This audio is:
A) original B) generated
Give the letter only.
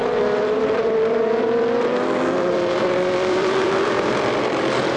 B